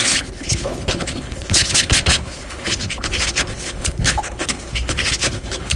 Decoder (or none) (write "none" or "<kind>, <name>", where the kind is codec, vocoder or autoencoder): codec, HILCodec